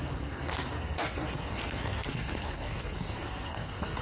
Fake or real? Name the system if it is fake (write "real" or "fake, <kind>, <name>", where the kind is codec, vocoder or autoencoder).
fake, codec, SNAC